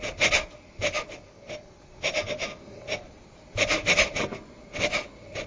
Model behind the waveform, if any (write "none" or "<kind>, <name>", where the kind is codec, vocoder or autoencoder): none